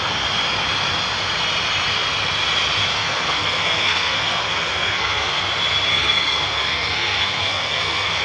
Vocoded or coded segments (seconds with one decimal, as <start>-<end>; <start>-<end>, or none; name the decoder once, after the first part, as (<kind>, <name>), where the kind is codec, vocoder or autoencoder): 2.9-5.4 (codec, SNAC); 5.9-8.2